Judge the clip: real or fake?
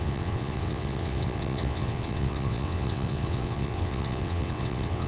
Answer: fake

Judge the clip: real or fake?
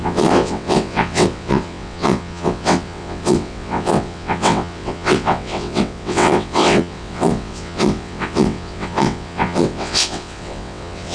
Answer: fake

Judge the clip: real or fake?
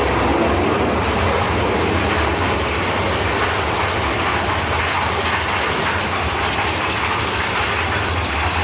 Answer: real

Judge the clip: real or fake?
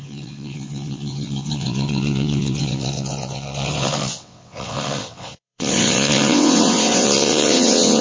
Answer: fake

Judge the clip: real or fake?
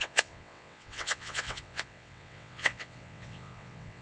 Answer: fake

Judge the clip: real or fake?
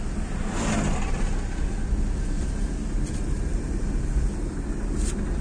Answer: real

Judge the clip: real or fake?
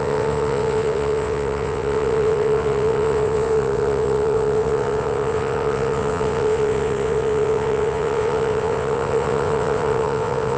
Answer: fake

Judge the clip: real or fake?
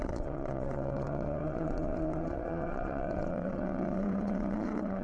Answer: fake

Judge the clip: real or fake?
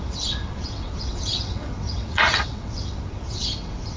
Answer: fake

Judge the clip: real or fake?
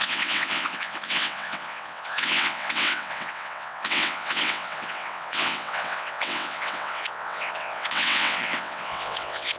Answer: fake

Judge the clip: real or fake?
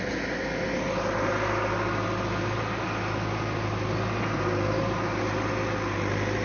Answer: real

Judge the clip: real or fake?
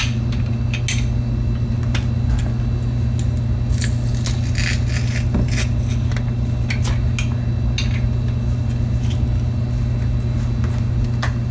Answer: real